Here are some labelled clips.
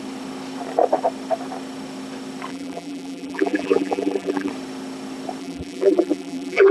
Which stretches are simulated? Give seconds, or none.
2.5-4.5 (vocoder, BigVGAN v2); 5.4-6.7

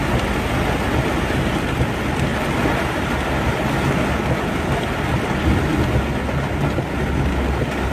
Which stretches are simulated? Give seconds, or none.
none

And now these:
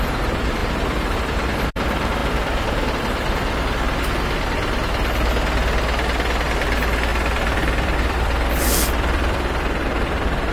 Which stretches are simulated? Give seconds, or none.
0.6-1.2 (vocoder, BigVGAN v2); 7.1-10.5